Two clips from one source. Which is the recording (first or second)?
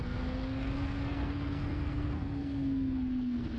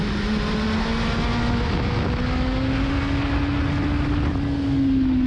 second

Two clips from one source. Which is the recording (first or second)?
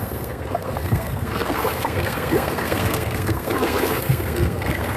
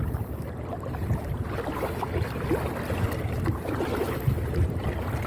second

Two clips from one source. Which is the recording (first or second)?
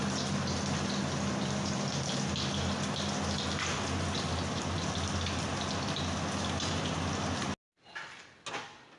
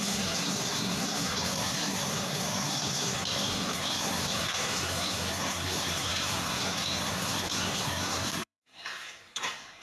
first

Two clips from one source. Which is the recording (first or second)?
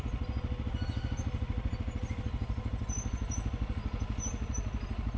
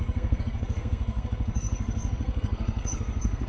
first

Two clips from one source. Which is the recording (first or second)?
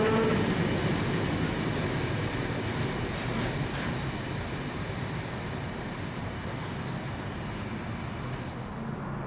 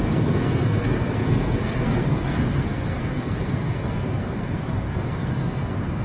first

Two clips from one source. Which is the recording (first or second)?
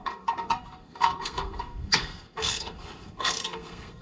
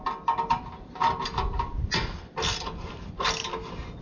second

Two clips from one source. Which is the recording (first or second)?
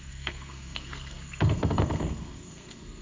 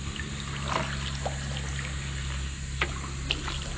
second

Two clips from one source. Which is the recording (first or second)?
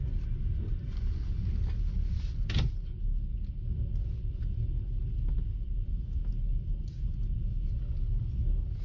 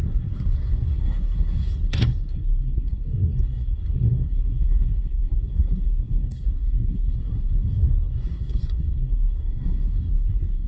first